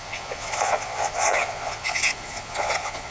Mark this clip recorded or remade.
remade